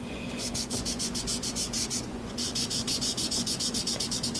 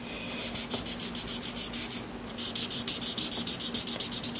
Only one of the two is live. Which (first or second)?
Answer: second